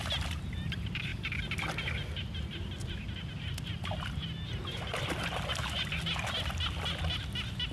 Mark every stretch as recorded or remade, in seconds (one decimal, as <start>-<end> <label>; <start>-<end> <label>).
0.0-7.7 recorded